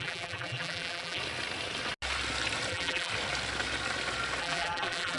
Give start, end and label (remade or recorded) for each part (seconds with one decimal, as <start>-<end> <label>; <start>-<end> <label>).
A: 0.0-1.2 remade; 1.2-2.7 recorded; 2.7-3.1 remade; 3.1-4.4 recorded; 4.4-5.2 remade